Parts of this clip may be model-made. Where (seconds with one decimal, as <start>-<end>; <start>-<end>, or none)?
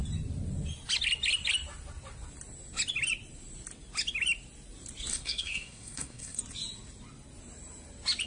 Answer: 5.1-6.4